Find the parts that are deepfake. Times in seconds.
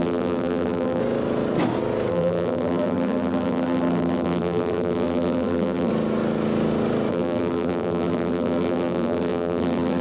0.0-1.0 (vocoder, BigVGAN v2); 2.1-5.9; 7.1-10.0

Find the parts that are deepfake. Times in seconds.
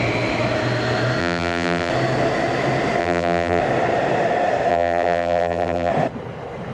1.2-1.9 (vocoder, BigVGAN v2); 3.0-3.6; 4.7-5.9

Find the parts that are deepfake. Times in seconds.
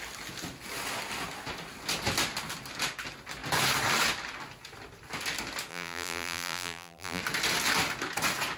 5.7-7.2 (vocoder, BigVGAN v2)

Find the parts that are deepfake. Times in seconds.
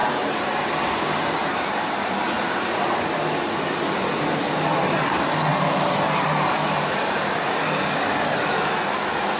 0.0-0.6 (vocoder, BigVGAN v2); 1.4-2.9; 5.5-7.3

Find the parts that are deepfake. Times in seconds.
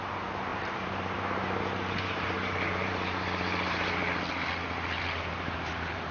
0.0-4.0 (vocoder, BigVGAN v2); 5.3-6.1